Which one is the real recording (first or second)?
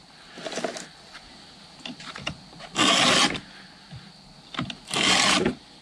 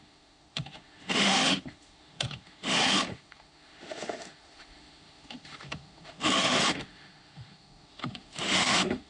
first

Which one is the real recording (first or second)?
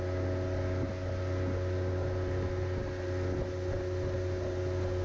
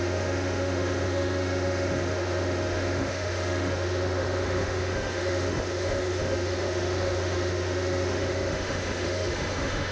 first